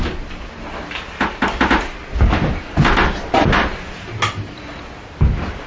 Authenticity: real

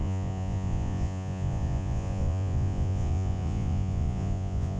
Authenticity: fake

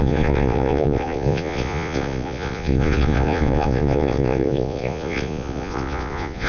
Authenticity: fake